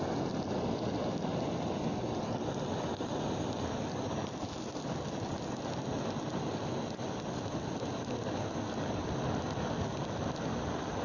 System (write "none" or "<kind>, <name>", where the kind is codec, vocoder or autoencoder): none